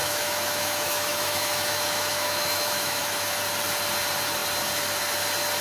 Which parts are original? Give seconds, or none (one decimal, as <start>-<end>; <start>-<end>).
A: 3.4-5.6